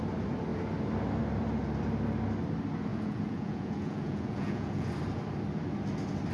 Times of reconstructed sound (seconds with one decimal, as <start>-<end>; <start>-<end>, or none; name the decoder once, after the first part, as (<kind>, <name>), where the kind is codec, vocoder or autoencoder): 2.9-4.9 (vocoder, Vocos)